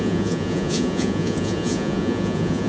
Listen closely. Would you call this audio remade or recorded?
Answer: remade